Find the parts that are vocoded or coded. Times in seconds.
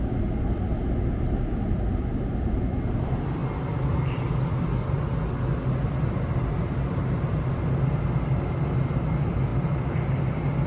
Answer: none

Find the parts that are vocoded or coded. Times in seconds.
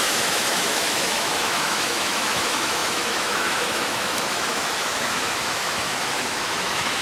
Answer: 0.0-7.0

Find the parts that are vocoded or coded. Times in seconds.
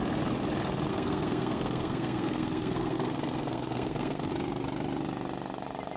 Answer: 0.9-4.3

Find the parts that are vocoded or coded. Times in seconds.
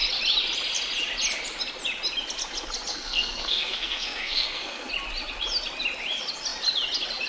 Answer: 2.9-4.9